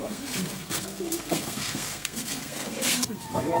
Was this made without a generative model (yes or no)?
no